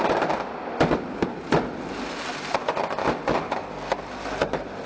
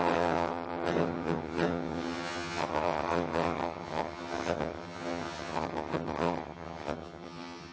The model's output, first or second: second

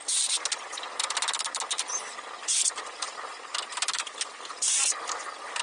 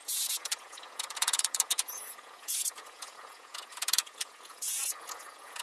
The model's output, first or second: second